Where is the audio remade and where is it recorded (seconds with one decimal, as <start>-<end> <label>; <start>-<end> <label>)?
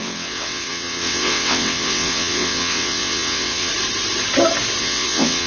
0.0-3.7 remade; 3.7-4.8 recorded; 4.8-5.5 remade